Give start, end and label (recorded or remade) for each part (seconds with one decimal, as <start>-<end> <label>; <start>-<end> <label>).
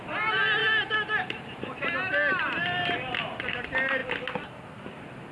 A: 0.0-5.3 recorded